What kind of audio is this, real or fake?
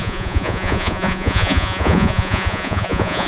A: fake